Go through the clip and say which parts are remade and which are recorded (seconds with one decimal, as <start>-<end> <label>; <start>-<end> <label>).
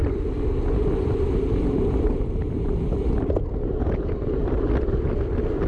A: 0.0-3.4 remade; 3.4-4.4 recorded; 4.4-5.2 remade; 5.2-5.7 recorded